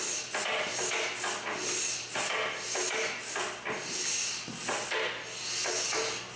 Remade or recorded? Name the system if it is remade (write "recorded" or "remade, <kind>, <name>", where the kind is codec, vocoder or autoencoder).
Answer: recorded